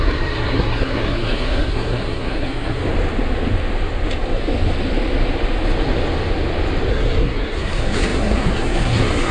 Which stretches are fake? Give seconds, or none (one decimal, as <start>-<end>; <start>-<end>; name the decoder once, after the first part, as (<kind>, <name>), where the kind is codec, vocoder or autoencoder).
0.0-2.8 (codec, SNAC); 6.9-9.3